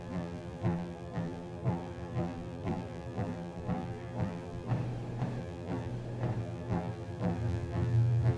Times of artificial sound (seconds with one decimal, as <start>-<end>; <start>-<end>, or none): 0.0-4.7; 5.4-5.9; 6.4-8.4